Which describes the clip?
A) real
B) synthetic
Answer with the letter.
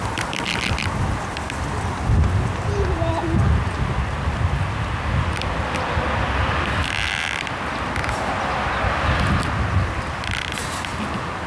A